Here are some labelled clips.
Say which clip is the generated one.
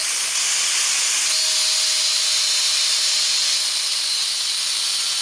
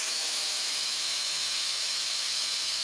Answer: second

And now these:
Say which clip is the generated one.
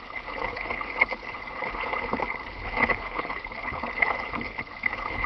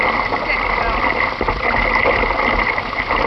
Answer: first